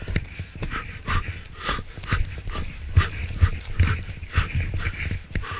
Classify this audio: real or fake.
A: real